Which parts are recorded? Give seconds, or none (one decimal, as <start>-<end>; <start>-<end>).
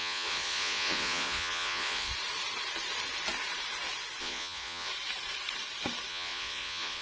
2.1-4.2; 4.9-6.1